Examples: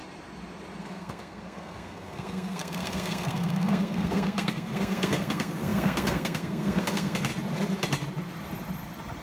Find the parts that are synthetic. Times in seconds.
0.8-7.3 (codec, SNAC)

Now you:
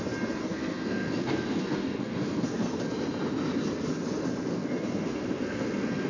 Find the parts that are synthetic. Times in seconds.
0.4-2.8 (codec, SNAC); 4.5-6.1

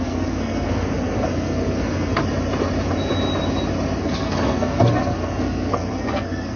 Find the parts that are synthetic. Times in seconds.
0.0-2.2 (codec, SNAC); 4.0-6.6

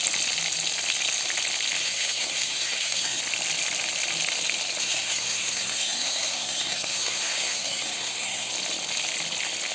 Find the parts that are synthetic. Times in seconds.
1.8-3.2 (codec, SNAC); 4.8-8.5

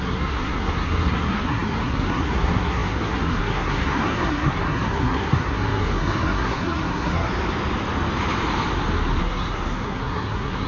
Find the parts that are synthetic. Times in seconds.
0.0-7.3 (codec, SNAC); 9.2-10.7